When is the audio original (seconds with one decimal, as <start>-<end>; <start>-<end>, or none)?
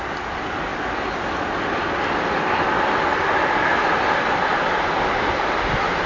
0.0-6.1